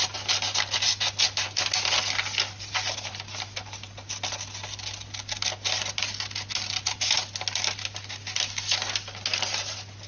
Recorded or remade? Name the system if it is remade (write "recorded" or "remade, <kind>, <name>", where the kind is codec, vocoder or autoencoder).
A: recorded